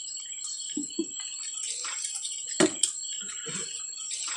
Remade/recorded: remade